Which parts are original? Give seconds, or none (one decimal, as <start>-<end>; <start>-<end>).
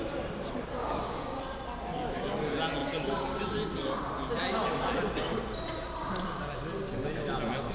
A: 0.0-0.8; 1.4-7.7